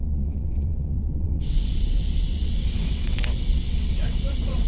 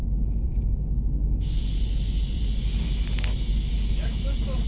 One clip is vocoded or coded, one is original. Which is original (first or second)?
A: second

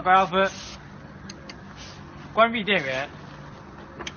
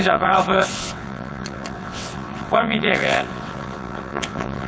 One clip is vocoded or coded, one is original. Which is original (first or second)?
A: first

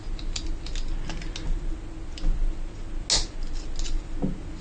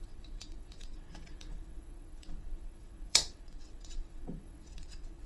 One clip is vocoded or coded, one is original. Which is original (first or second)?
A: first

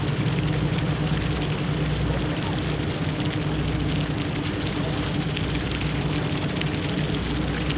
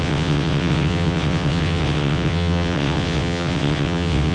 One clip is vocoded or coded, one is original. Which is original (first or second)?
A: first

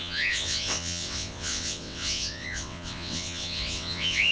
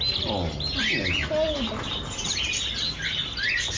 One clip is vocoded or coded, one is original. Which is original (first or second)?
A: second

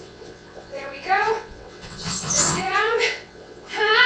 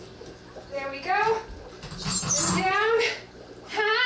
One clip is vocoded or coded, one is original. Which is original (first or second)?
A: second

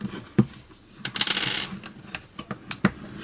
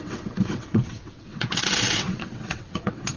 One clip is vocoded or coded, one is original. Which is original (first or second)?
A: first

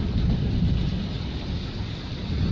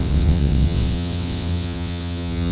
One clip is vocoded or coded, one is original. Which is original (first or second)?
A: first